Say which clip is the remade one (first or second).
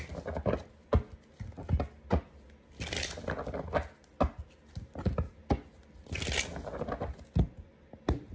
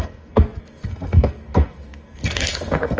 second